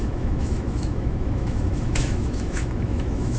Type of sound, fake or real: fake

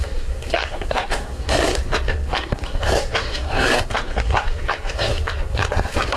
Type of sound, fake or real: fake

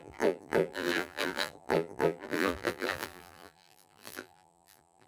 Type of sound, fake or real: fake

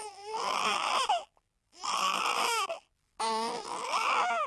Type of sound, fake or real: fake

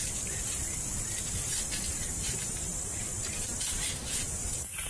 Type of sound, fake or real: fake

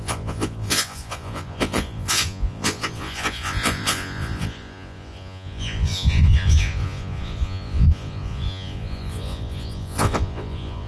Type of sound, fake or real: fake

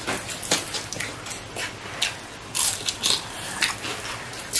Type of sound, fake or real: real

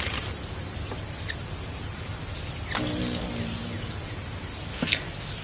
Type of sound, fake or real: real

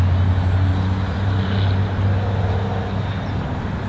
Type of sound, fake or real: real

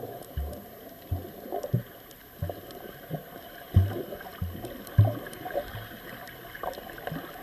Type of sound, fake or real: real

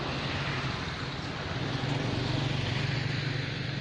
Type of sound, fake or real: real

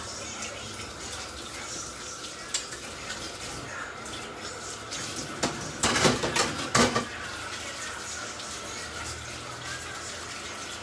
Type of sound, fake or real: real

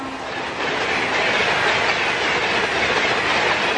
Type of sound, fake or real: real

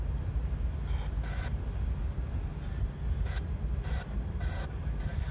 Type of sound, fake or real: real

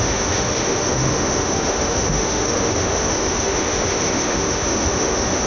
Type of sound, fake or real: fake